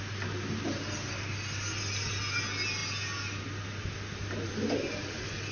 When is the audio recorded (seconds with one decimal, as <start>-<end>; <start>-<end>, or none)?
0.0-5.5